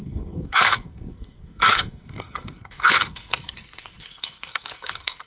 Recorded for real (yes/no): no